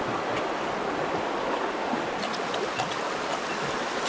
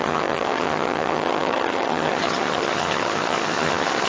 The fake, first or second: second